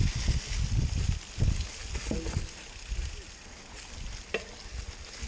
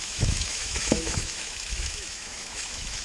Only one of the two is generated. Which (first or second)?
second